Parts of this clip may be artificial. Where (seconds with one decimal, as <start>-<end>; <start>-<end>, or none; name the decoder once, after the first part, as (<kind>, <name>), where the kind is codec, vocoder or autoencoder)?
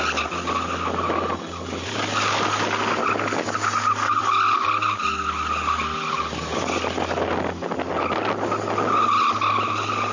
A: none